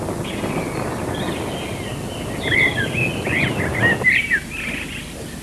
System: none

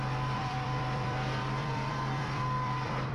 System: vocoder, BigVGAN v2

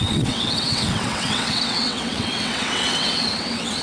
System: vocoder, WaveNeXt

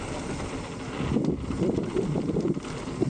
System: none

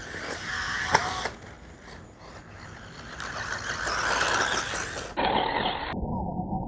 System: none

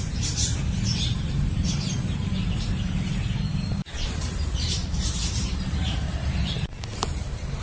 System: vocoder, BigVGAN v2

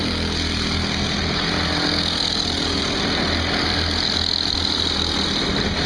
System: none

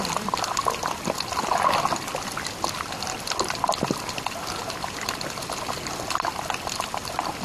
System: none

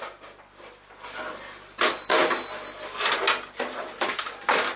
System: none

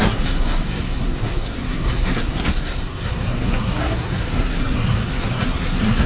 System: codec, SNAC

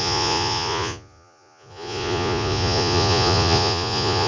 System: vocoder, Vocos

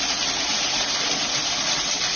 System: none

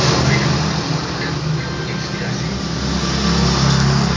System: none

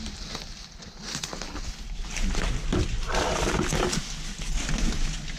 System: none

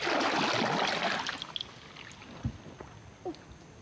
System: none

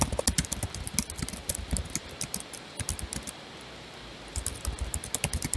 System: none